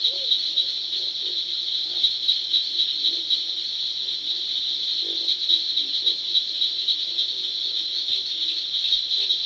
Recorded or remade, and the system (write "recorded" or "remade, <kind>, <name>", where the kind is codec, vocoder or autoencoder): recorded